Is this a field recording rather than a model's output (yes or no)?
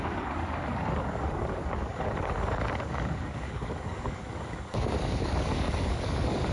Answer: no